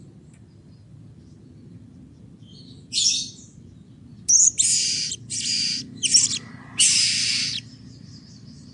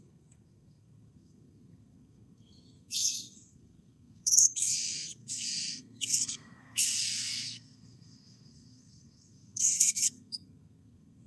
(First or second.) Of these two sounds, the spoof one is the second